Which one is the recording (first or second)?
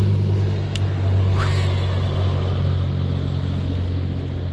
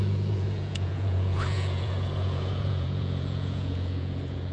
first